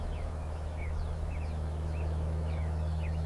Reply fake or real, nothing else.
fake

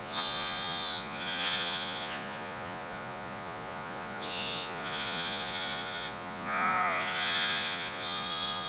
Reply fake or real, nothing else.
fake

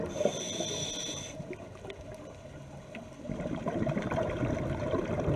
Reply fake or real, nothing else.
real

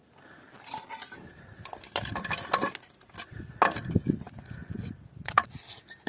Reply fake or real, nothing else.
real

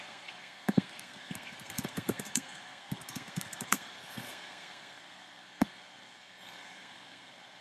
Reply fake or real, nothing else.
fake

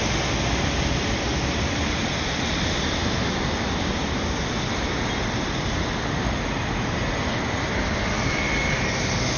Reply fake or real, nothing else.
real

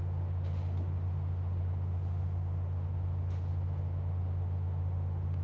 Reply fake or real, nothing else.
fake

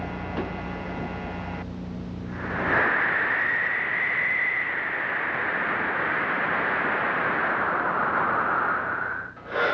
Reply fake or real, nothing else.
real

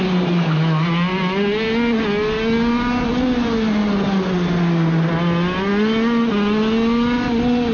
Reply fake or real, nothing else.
real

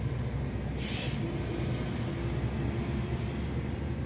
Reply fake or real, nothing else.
real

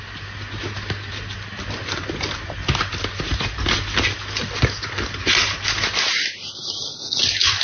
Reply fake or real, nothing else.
real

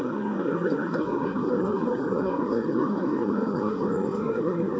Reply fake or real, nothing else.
fake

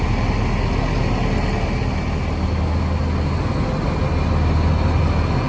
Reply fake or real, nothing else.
real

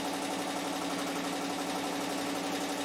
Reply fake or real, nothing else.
real